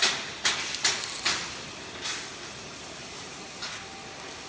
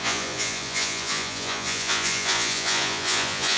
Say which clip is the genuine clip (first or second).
first